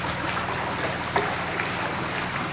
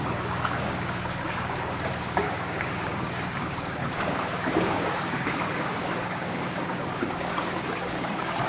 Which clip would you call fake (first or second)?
second